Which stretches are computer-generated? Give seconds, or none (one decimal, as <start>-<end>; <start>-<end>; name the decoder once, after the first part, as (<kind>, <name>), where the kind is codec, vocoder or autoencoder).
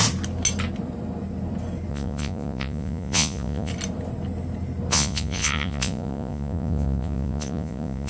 1.9-3.7 (vocoder, Vocos); 4.9-8.1